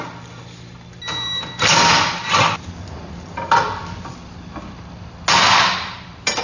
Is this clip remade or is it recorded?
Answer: recorded